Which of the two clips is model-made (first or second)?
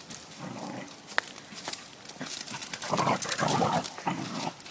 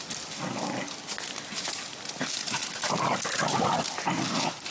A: first